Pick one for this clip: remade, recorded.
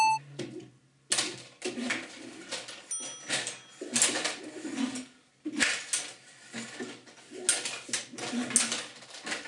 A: recorded